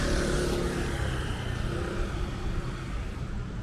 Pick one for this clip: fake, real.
real